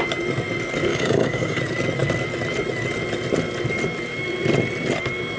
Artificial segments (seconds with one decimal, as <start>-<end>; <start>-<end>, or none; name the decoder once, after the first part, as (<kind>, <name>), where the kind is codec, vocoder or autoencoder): 0.9-1.6 (codec, DAC)